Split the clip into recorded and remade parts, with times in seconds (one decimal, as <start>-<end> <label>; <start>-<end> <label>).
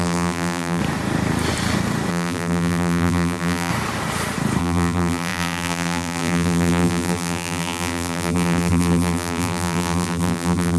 0.0-0.8 remade; 0.8-2.1 recorded; 2.1-3.7 remade; 3.7-4.6 recorded; 4.6-10.8 remade